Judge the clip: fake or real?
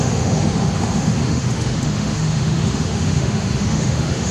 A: fake